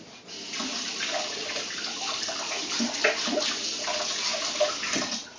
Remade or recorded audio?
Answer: recorded